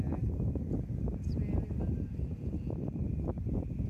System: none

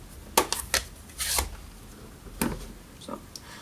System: none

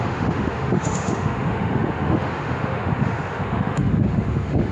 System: autoencoder, DAC-VAE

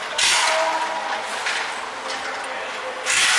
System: none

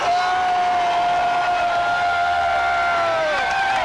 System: none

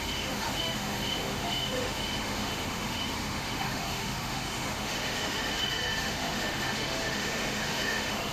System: autoencoder, DAC-VAE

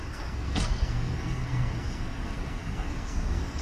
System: codec, SNAC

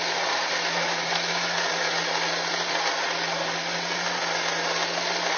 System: none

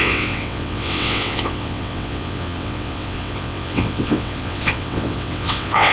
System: vocoder, WaveNeXt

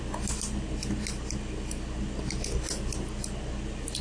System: none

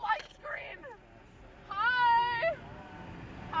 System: none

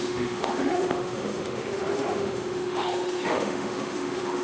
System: autoencoder, DAC-VAE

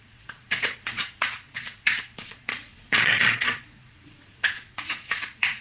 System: vocoder, Vocos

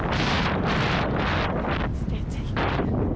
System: none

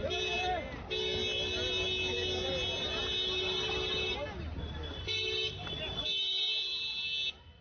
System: none